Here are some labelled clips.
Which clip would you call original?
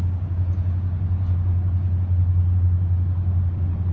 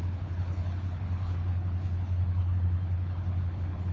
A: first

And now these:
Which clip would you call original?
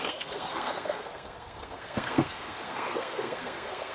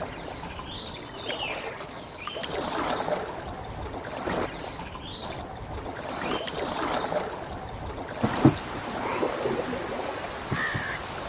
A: second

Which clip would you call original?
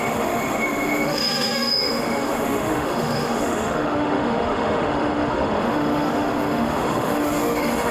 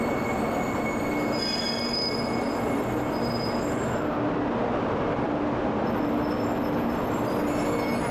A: second